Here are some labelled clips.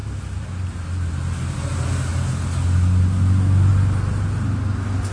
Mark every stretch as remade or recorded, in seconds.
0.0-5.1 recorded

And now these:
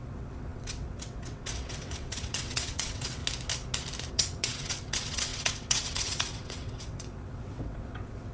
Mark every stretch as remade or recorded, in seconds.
0.0-3.2 remade; 3.2-4.1 recorded; 4.1-8.3 remade

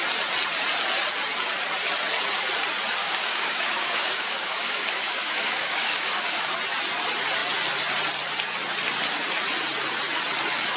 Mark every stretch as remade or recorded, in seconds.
0.0-3.0 recorded; 3.0-6.5 remade; 6.5-10.8 recorded

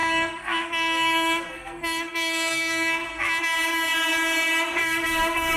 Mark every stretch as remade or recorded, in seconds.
0.0-3.4 remade; 3.4-4.8 recorded; 4.8-5.6 remade

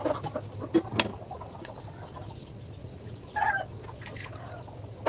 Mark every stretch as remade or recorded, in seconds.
0.0-1.1 recorded; 1.1-1.8 remade; 1.8-2.8 recorded; 2.8-3.5 remade; 3.5-5.1 recorded